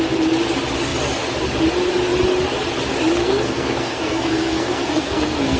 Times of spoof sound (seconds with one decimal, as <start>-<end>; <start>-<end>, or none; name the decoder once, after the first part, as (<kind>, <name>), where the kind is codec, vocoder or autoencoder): 3.2-5.6 (codec, SNAC)